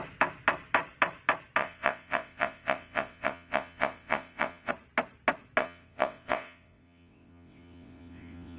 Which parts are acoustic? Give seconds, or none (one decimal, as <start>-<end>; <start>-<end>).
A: 0.0-1.6; 4.7-5.6